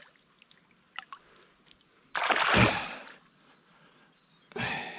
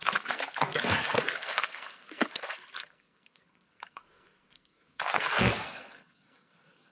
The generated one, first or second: second